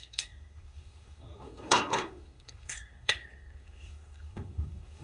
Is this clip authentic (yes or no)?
no